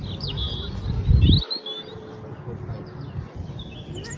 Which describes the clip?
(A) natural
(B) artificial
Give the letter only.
A